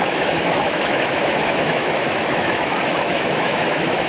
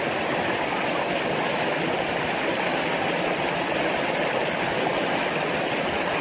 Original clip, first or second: second